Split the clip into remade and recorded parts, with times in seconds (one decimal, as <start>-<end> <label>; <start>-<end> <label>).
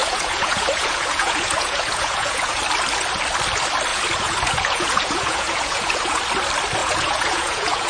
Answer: 0.0-2.6 remade; 2.6-3.9 recorded; 3.9-6.2 remade; 6.2-6.8 recorded; 6.8-7.9 remade